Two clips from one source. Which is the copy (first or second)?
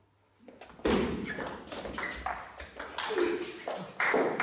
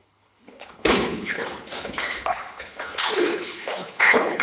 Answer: second